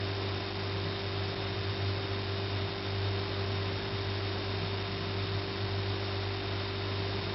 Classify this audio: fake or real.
real